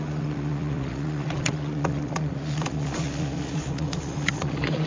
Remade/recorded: remade